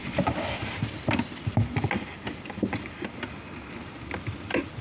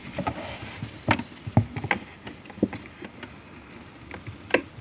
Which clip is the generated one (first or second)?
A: first